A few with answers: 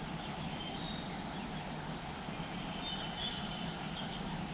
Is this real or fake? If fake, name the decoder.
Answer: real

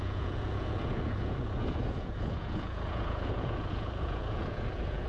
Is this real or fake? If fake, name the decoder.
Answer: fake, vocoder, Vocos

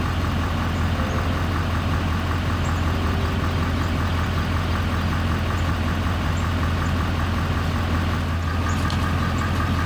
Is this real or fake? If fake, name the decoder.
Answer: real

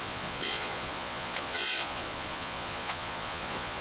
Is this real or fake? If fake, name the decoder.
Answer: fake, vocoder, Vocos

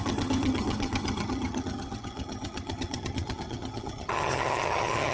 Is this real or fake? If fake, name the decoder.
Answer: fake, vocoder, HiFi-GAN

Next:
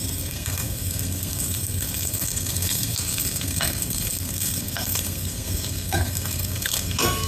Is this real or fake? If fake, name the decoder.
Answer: fake, codec, SNAC